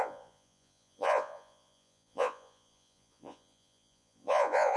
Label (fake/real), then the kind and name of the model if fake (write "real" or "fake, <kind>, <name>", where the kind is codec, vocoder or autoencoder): fake, vocoder, Vocos